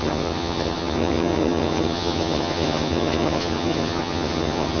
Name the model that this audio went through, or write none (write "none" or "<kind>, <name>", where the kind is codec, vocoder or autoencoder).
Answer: vocoder, HiFi-GAN